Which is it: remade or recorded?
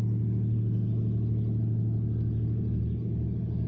recorded